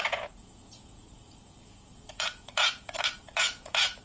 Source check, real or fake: fake